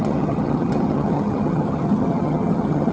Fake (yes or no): yes